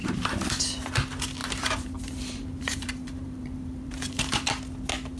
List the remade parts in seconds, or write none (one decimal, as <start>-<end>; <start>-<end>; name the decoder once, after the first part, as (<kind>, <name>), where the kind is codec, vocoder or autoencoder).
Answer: 0.0-0.6 (vocoder, BigVGAN v2); 1.4-4.5